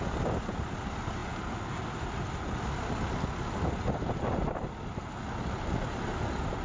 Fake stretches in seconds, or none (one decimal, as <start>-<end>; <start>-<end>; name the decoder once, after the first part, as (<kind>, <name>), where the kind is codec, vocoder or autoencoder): none